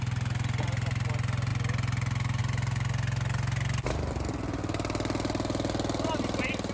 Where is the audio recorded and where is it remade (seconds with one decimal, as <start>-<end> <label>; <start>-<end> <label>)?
0.0-6.7 recorded